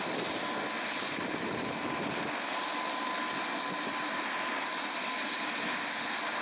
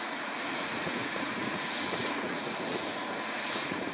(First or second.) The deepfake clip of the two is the second